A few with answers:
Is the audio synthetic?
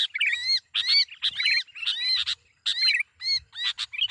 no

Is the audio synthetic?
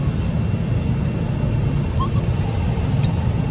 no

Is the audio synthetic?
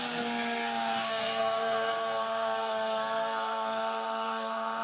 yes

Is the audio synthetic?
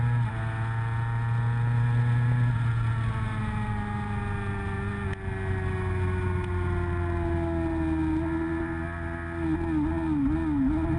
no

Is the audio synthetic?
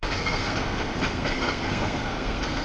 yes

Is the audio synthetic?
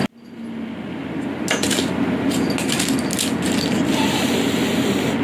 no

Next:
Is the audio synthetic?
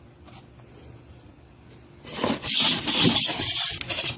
no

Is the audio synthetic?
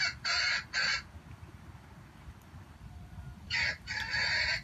no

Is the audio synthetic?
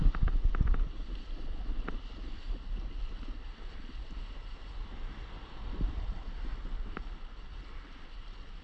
no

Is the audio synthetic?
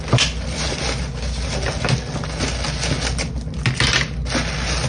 no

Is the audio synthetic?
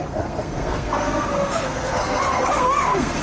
yes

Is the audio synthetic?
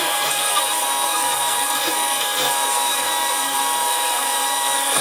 yes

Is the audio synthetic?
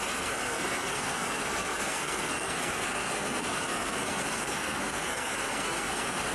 yes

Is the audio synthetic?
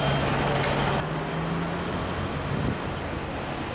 no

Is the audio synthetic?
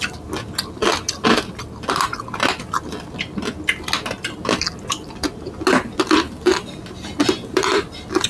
no